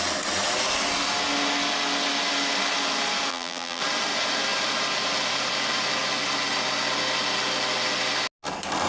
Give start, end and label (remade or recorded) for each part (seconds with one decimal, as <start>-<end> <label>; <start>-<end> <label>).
0.0-3.3 recorded; 3.3-3.8 remade; 3.8-8.9 recorded